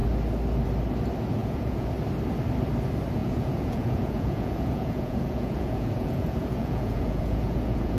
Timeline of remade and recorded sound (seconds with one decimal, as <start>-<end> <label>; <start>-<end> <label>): 0.0-1.4 recorded; 1.4-1.9 remade; 1.9-3.2 recorded; 3.2-8.0 remade